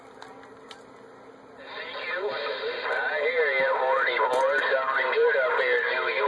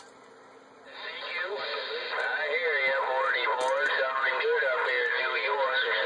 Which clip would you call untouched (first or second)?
second